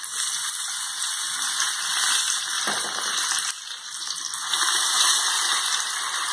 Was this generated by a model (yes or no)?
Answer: no